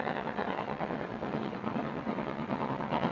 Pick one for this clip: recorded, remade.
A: remade